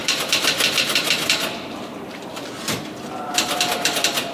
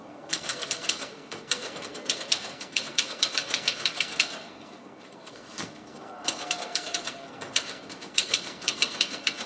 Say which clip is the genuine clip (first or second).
first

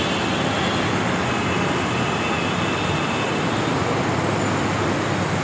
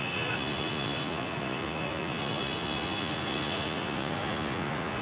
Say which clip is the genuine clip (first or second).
first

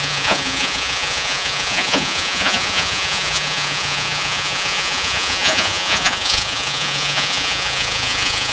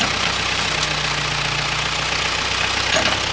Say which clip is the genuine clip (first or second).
second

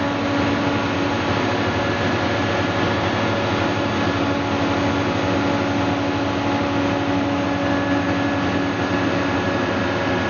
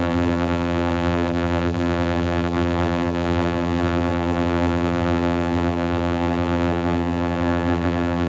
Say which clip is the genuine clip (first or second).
first